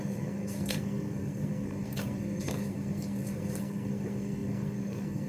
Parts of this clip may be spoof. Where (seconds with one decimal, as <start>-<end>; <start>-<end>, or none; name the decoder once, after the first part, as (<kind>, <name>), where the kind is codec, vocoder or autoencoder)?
0.0-5.3 (codec, SNAC)